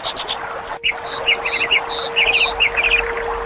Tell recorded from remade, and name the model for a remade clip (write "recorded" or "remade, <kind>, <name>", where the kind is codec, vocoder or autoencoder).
recorded